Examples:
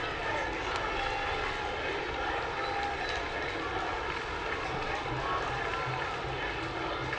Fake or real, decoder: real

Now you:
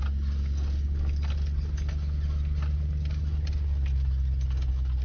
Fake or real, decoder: real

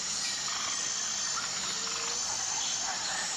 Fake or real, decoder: real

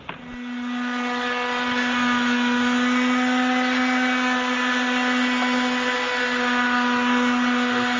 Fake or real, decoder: real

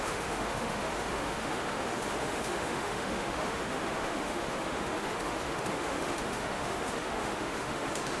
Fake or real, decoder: fake, autoencoder, DAC-VAE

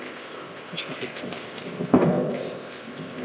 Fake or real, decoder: fake, codec, ZipCodec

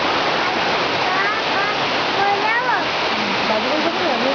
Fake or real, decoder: real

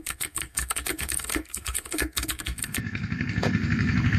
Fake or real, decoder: fake, codec, SNAC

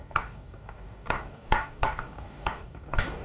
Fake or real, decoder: fake, codec, DAC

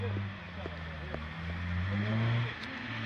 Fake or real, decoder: real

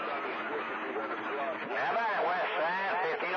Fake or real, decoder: real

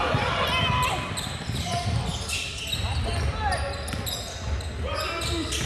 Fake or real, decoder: real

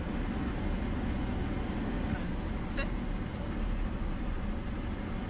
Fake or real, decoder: real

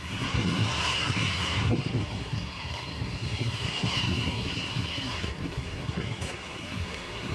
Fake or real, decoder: fake, codec, SNAC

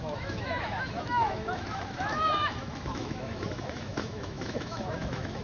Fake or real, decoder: fake, autoencoder, DAC-VAE